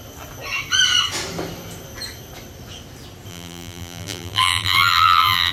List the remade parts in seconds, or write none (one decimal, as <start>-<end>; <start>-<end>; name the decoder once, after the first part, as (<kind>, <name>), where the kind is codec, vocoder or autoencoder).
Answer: 3.3-5.5 (vocoder, BigVGAN v2)